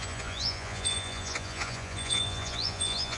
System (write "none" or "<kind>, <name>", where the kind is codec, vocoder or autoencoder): vocoder, Vocos